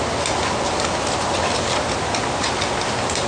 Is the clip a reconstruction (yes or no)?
no